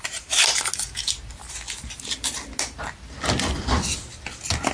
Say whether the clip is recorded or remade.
recorded